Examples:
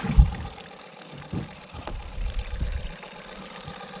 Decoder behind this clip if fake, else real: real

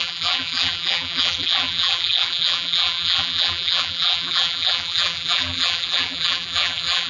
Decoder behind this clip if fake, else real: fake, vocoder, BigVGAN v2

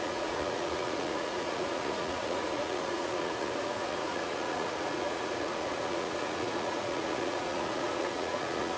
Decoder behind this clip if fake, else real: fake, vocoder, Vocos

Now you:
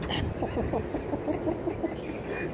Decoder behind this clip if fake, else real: real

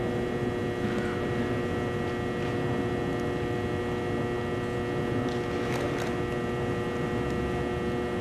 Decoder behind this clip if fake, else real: real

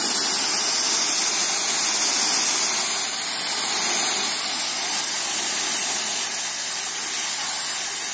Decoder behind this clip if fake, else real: real